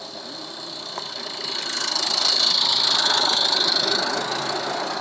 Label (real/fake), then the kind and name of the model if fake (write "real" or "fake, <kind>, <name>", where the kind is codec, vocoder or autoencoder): real